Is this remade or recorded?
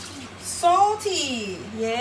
recorded